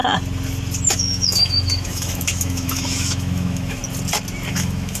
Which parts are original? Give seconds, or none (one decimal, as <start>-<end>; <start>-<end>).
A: 0.0-0.9; 3.8-4.5